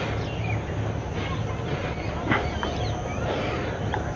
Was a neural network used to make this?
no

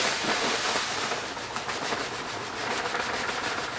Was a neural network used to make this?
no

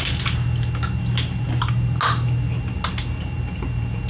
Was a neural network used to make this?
no